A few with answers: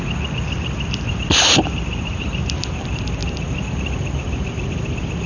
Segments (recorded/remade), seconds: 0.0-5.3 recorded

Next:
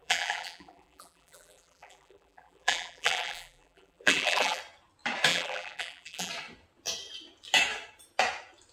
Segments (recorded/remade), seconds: 0.0-4.6 remade; 4.6-5.3 recorded; 5.3-6.3 remade; 6.3-8.7 recorded

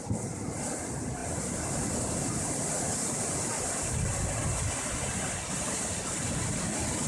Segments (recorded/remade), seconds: 0.0-7.1 recorded

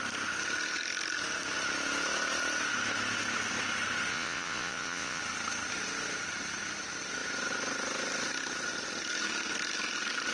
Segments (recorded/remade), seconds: 0.0-4.1 recorded; 4.1-5.2 remade; 5.2-10.3 recorded

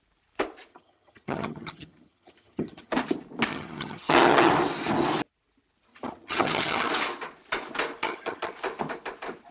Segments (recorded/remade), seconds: 0.0-0.7 recorded; 0.7-2.9 remade; 2.9-3.5 recorded; 3.5-4.5 remade; 4.5-5.9 recorded; 5.9-6.9 remade; 6.9-8.0 recorded; 8.0-8.5 remade; 8.5-9.5 recorded

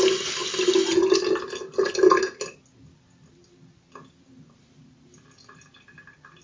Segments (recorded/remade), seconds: 0.0-6.4 recorded

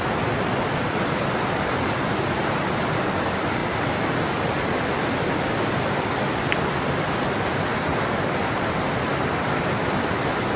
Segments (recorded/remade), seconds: 0.0-10.6 recorded

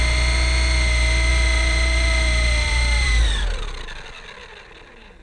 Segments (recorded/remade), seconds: 0.0-1.3 recorded; 1.3-3.6 remade; 3.6-5.2 recorded